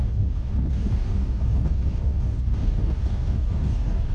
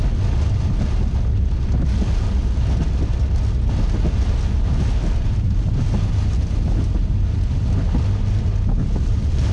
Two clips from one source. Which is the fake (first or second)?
first